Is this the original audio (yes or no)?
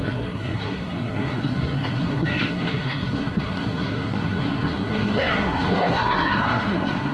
no